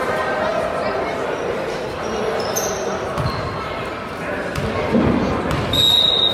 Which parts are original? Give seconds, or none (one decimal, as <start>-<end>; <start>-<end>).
0.0-6.3